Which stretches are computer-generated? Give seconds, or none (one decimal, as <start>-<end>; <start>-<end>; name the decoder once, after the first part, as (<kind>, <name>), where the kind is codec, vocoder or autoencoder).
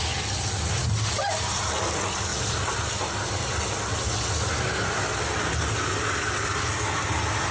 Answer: none